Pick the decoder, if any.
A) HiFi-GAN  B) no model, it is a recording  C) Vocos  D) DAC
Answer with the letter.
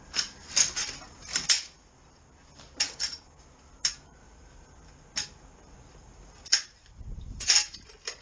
B